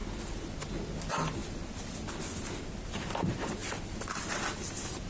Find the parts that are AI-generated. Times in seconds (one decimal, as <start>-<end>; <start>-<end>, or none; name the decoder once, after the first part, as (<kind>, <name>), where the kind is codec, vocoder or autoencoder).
0.0-0.6 (vocoder, BigVGAN v2); 3.6-4.2